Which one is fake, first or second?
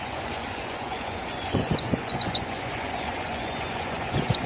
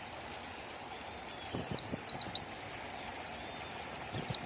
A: first